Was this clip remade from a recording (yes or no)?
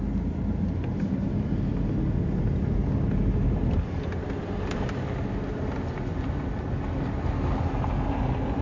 no